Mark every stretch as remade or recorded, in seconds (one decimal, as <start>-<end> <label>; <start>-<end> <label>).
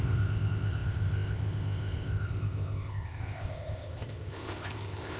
0.0-5.2 remade